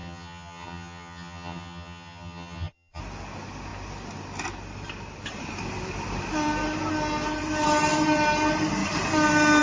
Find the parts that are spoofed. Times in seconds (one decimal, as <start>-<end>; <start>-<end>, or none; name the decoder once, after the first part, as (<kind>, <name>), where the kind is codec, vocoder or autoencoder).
0.0-3.0 (vocoder, HiFi-GAN)